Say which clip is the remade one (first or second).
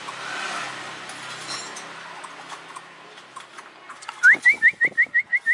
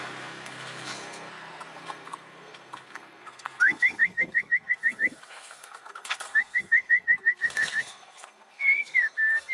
second